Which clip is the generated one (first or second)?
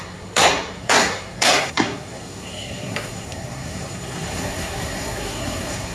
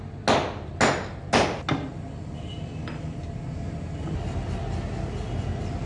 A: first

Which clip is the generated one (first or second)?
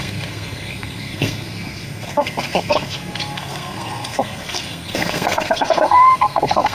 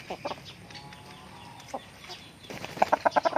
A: first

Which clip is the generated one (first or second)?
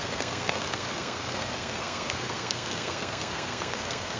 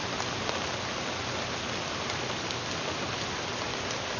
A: first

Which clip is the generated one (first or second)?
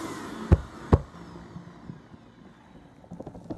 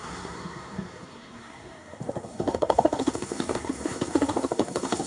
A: second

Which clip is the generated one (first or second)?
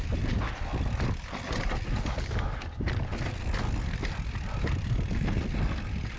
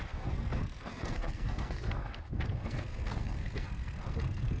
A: second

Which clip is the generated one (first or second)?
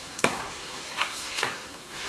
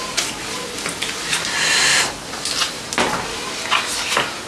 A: first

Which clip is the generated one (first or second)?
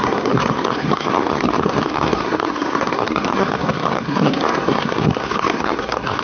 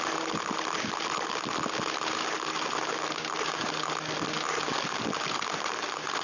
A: first